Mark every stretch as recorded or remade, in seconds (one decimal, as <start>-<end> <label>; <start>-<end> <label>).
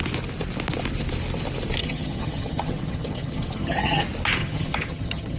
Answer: 0.0-1.8 recorded; 1.8-4.0 remade; 4.0-4.4 recorded; 4.4-5.4 remade